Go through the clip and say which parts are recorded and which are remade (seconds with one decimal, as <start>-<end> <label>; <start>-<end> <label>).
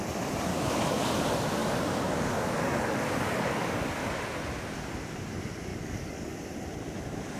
0.0-0.5 recorded; 0.5-1.2 remade; 1.2-1.6 recorded; 1.6-4.2 remade; 4.2-5.7 recorded; 5.7-6.3 remade; 6.3-7.4 recorded